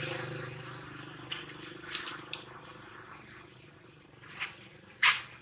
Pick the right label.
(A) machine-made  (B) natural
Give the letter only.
B